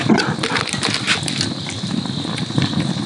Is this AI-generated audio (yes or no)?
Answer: no